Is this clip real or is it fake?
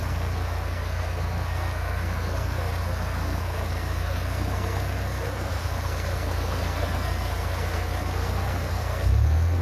fake